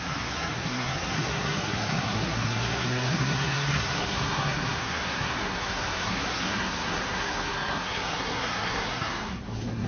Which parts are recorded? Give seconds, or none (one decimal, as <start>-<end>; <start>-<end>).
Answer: none